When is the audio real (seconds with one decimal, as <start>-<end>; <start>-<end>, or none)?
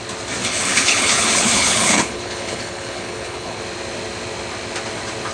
0.0-0.4; 3.6-5.3